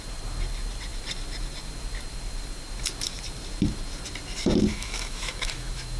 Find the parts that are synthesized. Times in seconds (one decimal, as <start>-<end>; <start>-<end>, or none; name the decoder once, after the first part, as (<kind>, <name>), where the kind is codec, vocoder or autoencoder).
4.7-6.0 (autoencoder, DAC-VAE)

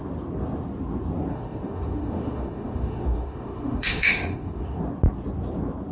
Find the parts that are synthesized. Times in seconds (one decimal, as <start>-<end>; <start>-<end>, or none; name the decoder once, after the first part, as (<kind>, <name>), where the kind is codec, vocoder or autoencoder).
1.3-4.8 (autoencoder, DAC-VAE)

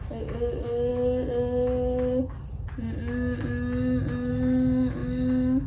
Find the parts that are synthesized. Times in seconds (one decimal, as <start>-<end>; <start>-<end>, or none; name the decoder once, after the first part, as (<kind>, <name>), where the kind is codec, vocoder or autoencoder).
0.0-0.9 (autoencoder, DAC-VAE); 4.3-5.7